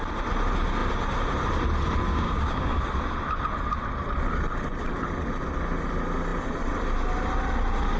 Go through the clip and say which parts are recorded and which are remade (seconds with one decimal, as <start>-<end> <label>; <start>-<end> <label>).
0.0-2.1 recorded; 2.1-2.8 remade; 2.8-8.0 recorded